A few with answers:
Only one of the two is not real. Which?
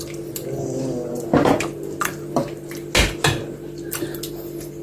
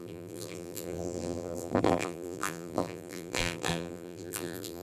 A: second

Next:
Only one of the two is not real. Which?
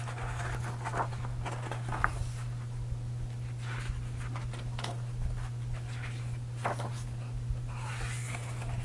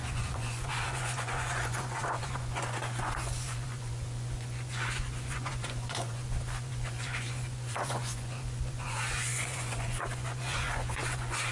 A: second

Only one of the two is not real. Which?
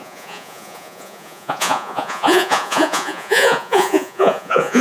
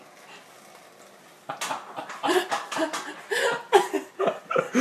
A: first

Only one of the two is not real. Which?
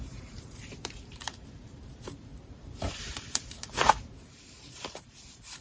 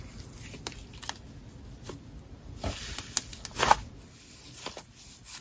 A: first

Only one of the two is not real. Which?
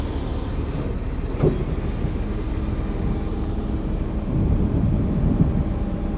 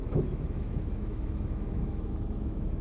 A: second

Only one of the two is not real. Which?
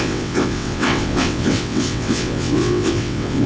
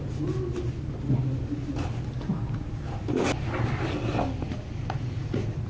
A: first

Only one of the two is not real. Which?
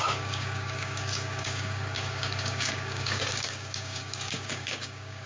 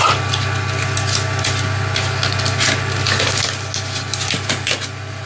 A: first